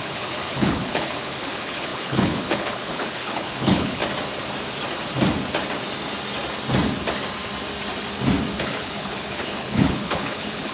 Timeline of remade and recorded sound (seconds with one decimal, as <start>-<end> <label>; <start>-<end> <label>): 0.0-4.0 remade; 4.0-8.6 recorded; 8.6-10.7 remade